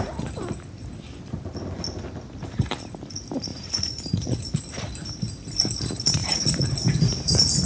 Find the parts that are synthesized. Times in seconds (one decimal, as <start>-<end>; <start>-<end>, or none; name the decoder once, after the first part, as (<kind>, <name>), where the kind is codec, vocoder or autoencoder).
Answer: 3.5-4.5 (vocoder, Vocos); 6.2-6.7